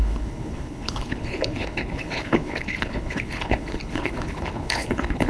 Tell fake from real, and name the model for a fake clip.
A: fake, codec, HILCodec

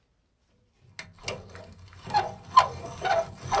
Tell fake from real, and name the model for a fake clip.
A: real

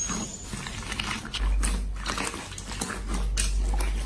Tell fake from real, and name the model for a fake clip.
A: real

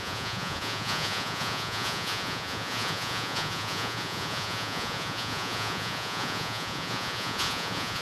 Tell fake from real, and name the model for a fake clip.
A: fake, vocoder, Vocos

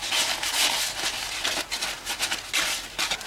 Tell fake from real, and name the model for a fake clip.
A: real